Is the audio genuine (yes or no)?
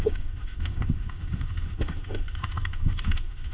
no